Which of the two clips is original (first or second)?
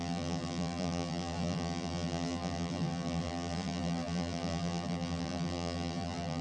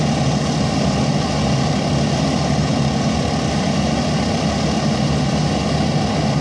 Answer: second